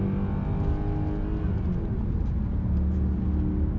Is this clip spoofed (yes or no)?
no